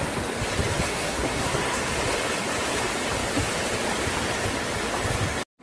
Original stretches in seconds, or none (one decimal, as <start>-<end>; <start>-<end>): 0.0-0.9; 1.8-5.6